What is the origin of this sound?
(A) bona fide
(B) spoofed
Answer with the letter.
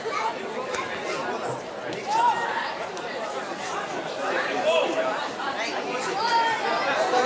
A